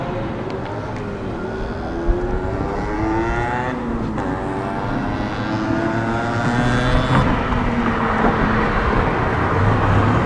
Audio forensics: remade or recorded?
recorded